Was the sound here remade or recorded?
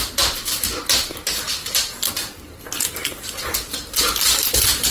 recorded